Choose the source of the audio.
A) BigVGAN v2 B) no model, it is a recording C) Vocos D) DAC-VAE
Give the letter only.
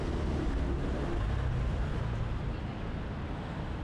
B